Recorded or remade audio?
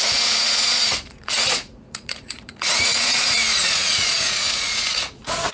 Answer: remade